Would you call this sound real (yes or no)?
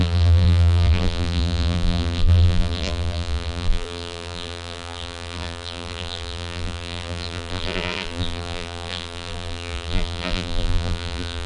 no